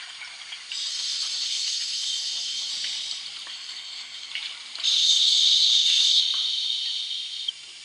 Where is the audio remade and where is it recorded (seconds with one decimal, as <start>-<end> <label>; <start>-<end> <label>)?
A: 0.0-0.9 recorded; 0.9-2.7 remade; 2.7-3.5 recorded; 3.5-4.3 remade; 4.3-4.9 recorded; 4.9-6.2 remade; 6.2-7.8 recorded